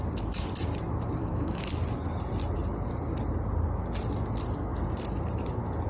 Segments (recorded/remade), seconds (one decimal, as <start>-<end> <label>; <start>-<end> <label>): 0.0-1.2 recorded; 1.2-1.7 remade; 1.7-5.9 recorded